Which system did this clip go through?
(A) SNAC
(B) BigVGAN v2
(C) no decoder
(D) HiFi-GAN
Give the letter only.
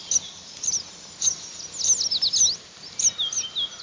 C